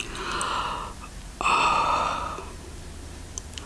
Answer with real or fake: real